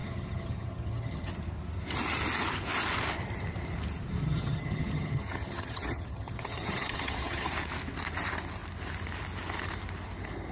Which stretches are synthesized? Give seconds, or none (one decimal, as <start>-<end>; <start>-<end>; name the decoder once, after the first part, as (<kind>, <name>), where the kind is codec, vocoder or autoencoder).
0.0-1.3 (vocoder, HiFi-GAN); 4.2-7.5